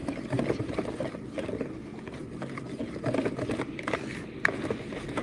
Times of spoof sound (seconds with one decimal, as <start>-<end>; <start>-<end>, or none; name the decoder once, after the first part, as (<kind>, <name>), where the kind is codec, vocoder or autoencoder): none